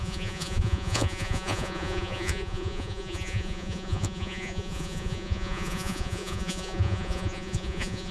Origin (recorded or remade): remade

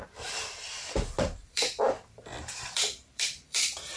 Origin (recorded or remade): remade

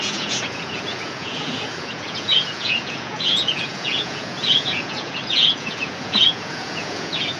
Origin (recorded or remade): remade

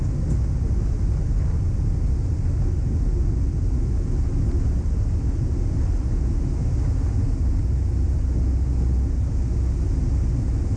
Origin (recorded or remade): recorded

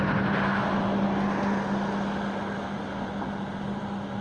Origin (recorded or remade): recorded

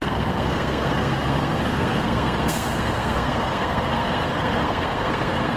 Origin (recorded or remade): remade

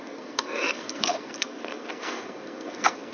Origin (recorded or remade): remade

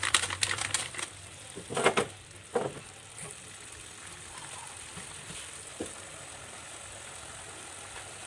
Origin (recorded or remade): recorded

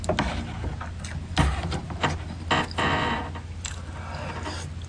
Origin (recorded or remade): recorded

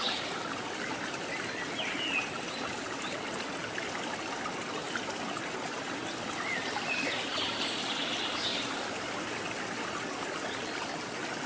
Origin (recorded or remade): recorded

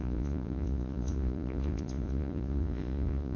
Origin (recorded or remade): remade